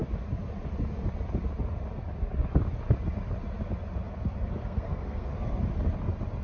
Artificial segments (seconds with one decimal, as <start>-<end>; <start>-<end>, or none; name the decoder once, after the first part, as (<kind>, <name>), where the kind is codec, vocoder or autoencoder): 4.6-5.6 (codec, SNAC)